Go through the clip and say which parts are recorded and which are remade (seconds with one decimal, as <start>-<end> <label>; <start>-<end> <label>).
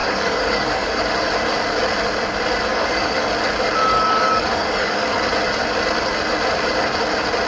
0.0-1.1 remade; 1.1-2.7 recorded; 2.7-3.3 remade; 3.3-3.8 recorded; 3.8-5.3 remade; 5.3-7.5 recorded